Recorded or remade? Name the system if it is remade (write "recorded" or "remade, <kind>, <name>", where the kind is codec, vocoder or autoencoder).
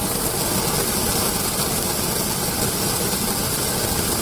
recorded